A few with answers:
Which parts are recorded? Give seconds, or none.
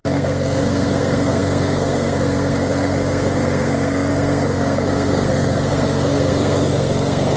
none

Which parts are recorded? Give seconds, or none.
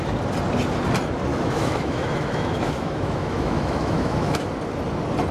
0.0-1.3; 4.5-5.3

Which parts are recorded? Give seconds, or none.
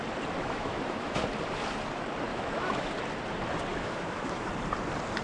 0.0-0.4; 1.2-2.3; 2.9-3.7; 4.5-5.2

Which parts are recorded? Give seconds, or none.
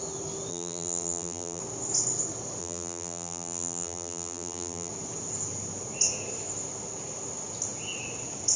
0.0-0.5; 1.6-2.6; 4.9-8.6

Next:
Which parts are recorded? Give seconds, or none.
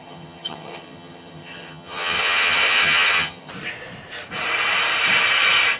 3.5-5.8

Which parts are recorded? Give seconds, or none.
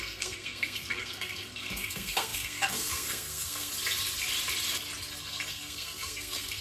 3.7-5.2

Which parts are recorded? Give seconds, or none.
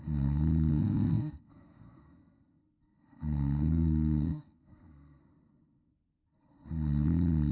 0.0-0.7; 5.2-7.5